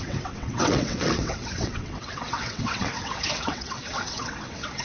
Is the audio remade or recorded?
remade